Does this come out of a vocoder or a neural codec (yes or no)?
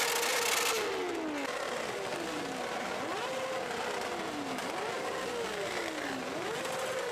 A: no